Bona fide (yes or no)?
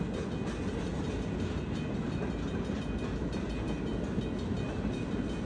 yes